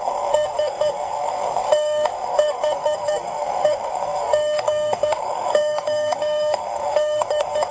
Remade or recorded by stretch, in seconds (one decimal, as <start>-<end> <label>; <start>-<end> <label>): 0.0-7.7 remade